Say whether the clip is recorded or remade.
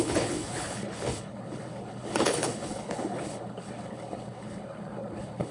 remade